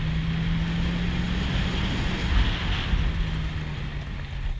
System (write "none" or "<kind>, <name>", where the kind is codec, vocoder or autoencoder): none